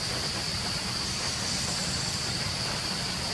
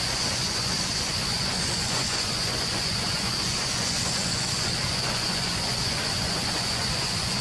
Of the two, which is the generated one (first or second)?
second